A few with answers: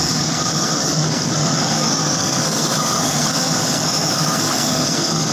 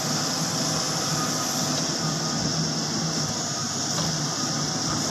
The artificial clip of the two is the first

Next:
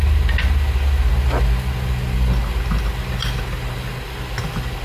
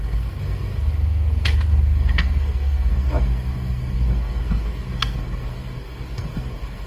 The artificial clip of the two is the second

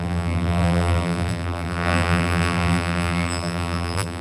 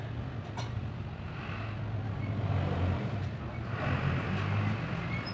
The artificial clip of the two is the first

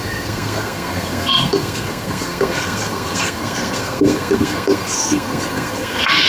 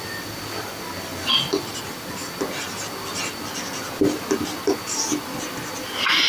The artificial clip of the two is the first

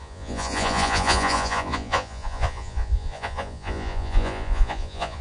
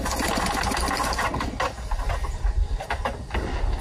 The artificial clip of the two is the first